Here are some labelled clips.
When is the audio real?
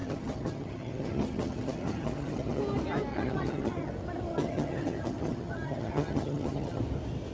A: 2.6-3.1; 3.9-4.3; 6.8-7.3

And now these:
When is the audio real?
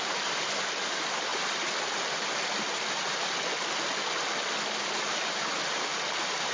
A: 0.0-6.5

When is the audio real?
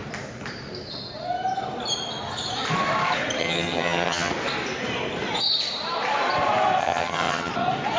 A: 0.0-3.4; 4.3-6.8; 7.5-8.0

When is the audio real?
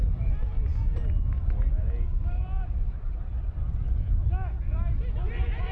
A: 0.0-5.7